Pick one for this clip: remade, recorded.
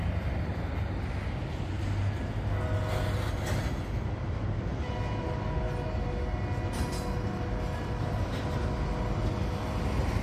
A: recorded